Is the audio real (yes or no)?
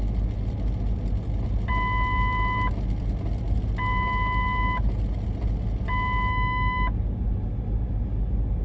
yes